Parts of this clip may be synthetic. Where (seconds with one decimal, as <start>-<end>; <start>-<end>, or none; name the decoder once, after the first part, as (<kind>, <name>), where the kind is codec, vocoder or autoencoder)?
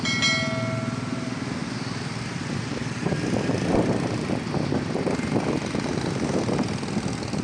none